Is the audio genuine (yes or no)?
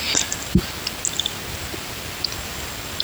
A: yes